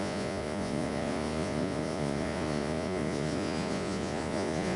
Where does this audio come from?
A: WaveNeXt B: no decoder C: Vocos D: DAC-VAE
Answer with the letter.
C